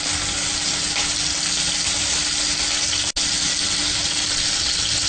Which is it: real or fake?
real